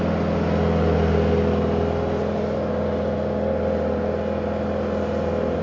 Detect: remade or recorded recorded